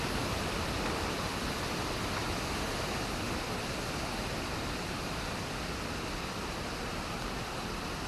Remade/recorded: recorded